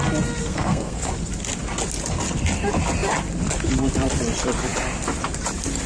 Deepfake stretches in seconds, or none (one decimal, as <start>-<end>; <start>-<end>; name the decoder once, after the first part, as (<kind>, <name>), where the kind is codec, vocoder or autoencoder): 0.4-1.1 (codec, SNAC)